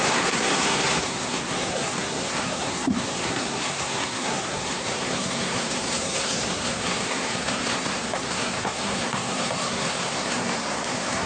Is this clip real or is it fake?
fake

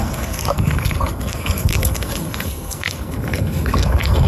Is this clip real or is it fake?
fake